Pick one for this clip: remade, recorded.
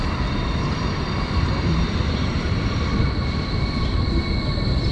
remade